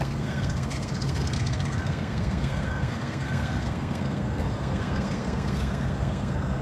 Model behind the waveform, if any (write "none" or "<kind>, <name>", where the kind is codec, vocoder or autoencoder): codec, SNAC